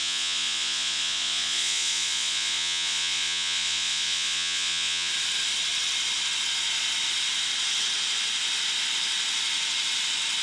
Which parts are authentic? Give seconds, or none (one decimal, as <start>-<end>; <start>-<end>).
5.1-10.4